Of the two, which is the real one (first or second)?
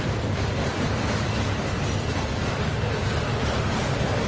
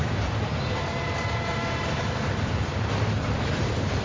first